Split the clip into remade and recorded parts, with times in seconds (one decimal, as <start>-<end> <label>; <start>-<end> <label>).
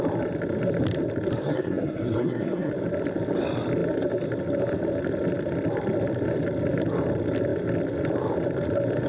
0.0-1.4 recorded; 1.4-2.7 remade; 2.7-9.1 recorded